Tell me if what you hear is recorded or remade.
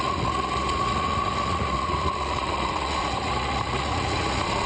remade